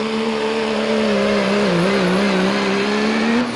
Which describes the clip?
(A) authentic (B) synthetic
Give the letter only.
A